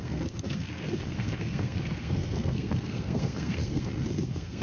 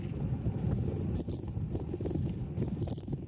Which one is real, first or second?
second